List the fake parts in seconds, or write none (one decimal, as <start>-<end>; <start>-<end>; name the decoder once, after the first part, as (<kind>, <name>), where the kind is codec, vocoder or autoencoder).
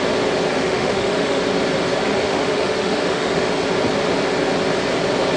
0.5-1.4 (autoencoder, DAC-VAE); 2.1-3.5